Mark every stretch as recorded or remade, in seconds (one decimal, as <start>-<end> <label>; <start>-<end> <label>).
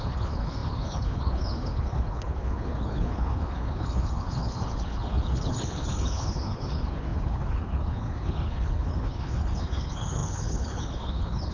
0.0-11.5 remade